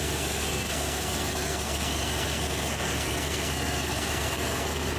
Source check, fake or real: fake